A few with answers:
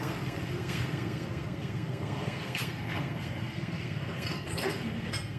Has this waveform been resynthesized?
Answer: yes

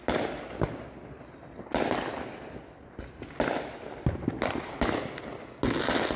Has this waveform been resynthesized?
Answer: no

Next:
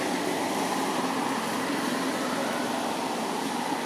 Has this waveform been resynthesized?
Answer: no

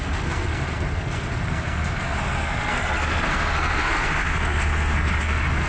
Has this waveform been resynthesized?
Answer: yes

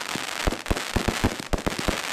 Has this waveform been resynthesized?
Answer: no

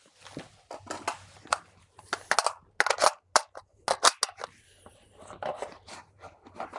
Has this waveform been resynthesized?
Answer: no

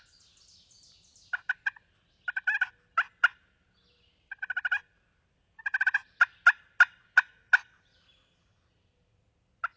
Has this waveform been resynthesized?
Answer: no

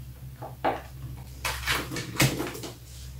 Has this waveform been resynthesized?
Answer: no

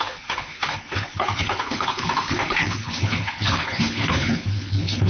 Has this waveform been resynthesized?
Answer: yes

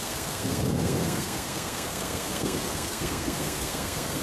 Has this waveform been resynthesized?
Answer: yes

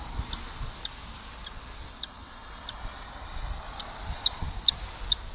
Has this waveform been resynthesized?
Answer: no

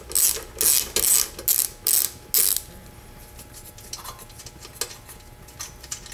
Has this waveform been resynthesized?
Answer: no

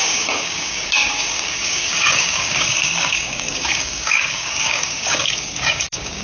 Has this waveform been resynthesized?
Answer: yes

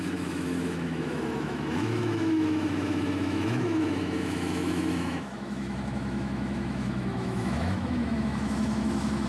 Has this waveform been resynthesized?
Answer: yes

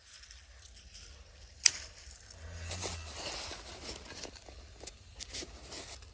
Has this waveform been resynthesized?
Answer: no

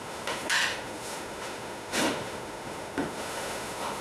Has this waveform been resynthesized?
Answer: yes